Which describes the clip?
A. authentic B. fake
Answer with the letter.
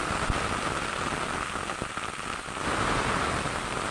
A